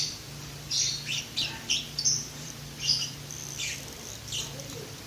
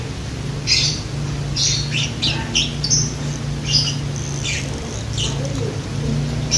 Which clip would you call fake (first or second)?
first